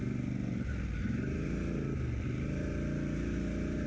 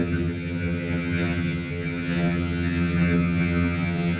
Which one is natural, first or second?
first